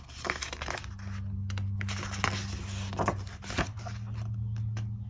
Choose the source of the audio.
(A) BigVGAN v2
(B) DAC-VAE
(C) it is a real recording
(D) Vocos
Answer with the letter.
C